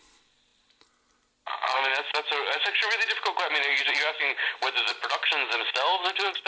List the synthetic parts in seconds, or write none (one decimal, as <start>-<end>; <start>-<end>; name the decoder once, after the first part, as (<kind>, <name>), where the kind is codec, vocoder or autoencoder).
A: none